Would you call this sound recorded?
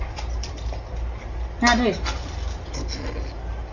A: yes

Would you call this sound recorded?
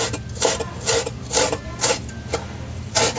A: yes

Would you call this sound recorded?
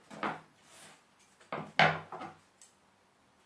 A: yes